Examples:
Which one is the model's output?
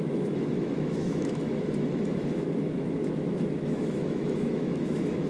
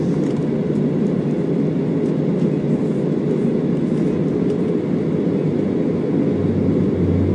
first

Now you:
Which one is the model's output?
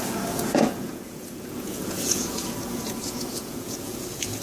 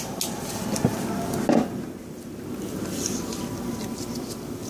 first